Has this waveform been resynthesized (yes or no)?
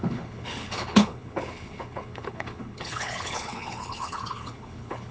yes